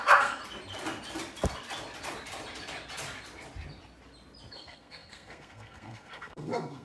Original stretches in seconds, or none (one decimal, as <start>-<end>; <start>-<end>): 0.4-4.5